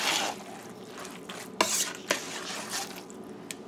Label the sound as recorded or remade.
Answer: recorded